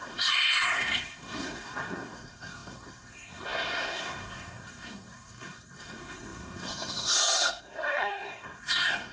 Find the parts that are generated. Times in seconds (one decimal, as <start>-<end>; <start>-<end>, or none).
0.0-9.1